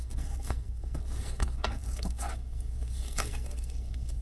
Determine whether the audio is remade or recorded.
remade